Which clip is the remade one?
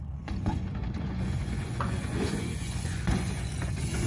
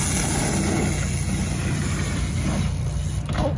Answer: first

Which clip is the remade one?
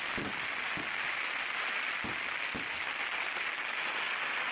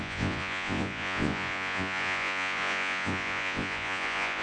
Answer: second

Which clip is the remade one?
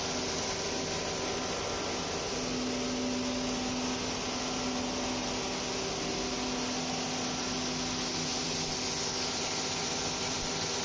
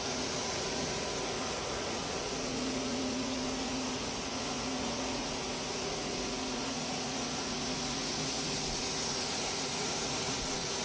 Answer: second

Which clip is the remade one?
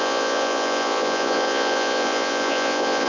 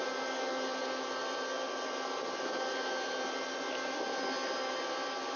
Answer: first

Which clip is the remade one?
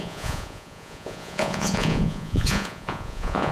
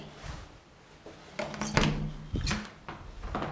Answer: first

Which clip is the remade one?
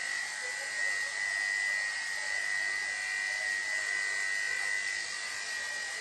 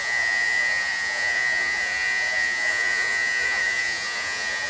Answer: second